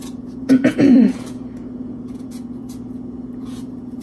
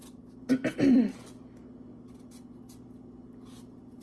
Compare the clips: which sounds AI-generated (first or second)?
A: first